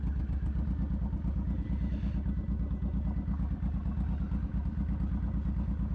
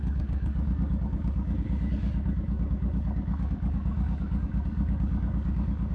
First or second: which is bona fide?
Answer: first